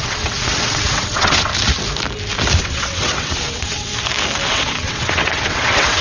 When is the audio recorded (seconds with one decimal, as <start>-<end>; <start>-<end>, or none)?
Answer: 1.5-2.6; 3.9-4.5